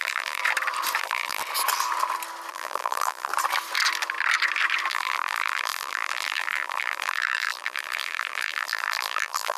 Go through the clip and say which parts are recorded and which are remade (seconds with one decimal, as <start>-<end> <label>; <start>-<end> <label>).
0.0-0.4 remade; 0.4-1.0 recorded; 1.0-1.4 remade; 1.4-2.5 recorded; 2.5-3.3 remade; 3.3-4.9 recorded; 4.9-9.6 remade